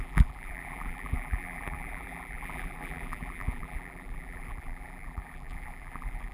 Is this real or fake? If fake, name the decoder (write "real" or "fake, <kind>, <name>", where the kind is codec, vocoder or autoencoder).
fake, vocoder, BigVGAN v2